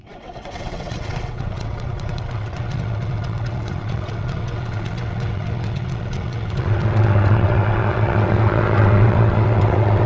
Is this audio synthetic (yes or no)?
yes